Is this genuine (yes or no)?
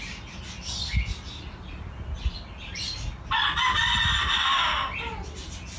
yes